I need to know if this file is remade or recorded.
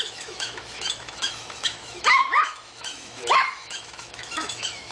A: remade